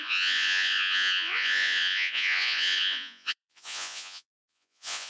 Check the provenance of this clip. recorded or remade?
remade